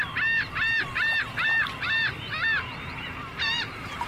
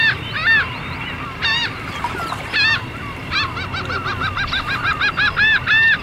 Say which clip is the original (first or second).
first